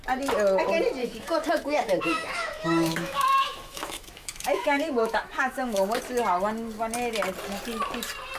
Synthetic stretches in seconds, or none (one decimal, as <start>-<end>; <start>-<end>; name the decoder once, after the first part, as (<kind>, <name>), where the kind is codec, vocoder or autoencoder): 1.0-6.0 (autoencoder, DAC-VAE)